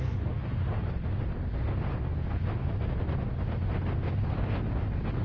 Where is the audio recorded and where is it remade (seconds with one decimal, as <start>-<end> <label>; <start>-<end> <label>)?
0.0-5.2 recorded